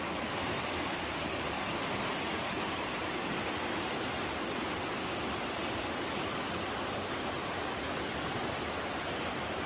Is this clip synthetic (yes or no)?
no